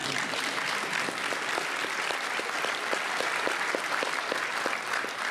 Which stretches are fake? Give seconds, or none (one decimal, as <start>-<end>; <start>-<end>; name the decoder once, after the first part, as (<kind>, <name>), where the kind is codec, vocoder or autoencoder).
0.0-2.4 (vocoder, BigVGAN v2)